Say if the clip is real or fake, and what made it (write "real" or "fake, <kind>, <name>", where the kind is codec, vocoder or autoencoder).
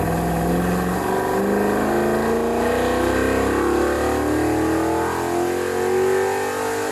real